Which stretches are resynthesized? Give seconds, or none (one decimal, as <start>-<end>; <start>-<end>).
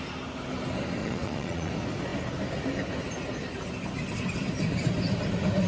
1.0-1.7